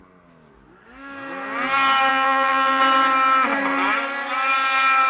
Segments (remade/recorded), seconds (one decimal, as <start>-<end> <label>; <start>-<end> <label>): 0.0-2.1 recorded; 2.1-2.8 remade; 2.8-5.1 recorded